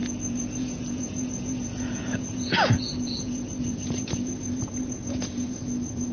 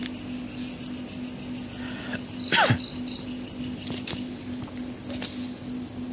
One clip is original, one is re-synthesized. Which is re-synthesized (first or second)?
first